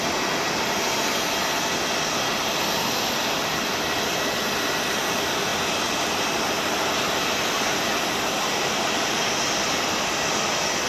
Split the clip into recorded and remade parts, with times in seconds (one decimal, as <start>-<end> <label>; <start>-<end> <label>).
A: 0.0-10.9 recorded